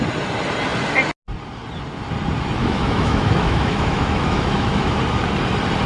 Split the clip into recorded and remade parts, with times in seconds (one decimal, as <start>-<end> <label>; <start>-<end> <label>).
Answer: 0.0-2.6 recorded; 2.6-5.0 remade; 5.0-5.9 recorded